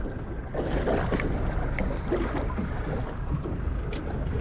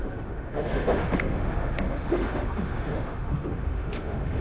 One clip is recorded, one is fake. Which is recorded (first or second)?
first